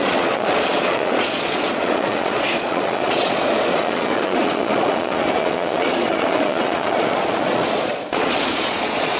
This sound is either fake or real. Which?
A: fake